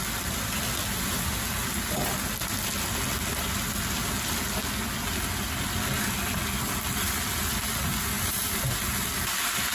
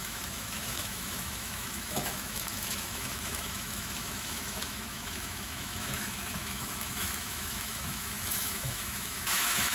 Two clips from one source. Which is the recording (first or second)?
first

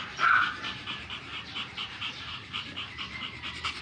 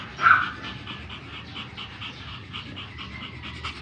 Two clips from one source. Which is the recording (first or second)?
second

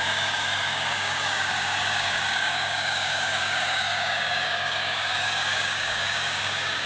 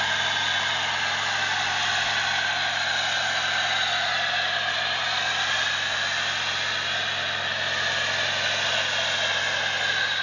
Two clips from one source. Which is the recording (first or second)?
second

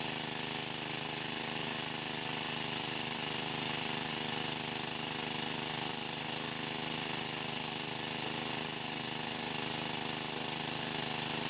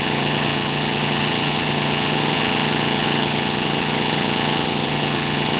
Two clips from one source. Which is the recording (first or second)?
first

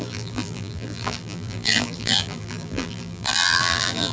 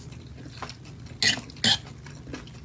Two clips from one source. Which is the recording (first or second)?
second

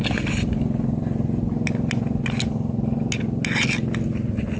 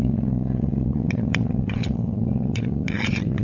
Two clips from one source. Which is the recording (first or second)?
first